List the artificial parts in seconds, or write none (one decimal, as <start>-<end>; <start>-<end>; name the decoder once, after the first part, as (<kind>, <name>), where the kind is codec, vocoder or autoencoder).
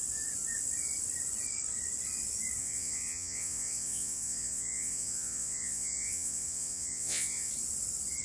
2.6-7.5 (vocoder, Vocos)